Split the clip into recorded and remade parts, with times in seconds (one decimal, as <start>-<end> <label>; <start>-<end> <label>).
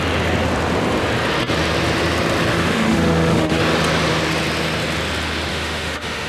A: 0.0-2.5 recorded; 2.5-3.6 remade; 3.6-5.5 recorded; 5.5-6.3 remade